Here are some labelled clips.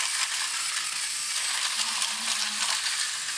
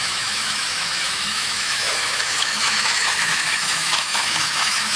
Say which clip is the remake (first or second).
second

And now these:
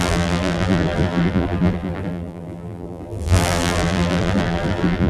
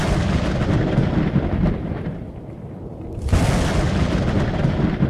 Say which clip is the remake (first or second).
first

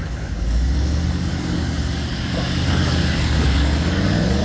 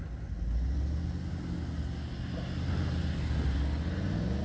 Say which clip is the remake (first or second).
first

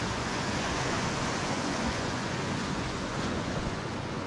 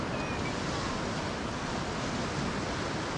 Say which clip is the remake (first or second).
first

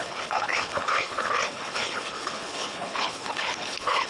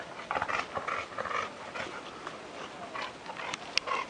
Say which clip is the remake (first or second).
first